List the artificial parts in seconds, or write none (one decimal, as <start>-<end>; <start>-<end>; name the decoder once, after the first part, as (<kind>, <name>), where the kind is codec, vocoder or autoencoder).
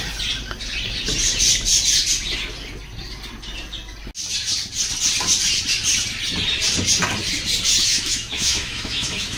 7.8-9.4 (autoencoder, DAC-VAE)